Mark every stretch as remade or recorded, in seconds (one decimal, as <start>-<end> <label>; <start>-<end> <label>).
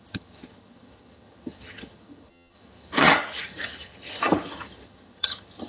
0.0-5.7 remade